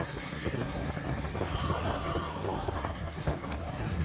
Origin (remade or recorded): remade